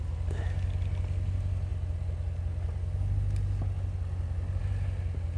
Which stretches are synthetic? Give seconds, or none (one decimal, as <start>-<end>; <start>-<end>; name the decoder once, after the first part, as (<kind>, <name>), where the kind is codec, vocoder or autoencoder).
none